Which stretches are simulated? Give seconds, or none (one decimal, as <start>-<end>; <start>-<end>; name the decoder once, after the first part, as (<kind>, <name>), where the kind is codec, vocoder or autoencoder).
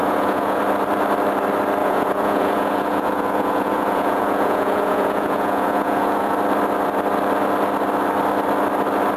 0.0-0.6 (vocoder, Vocos); 1.8-6.3